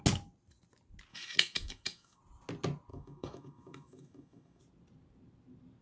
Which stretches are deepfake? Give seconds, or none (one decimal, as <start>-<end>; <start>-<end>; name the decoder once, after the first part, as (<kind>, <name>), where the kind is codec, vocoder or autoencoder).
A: 1.1-2.2 (autoencoder, DAC-VAE); 2.9-4.6